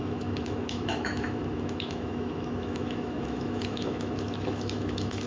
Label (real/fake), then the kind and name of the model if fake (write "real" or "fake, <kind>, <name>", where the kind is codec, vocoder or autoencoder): fake, autoencoder, DAC-VAE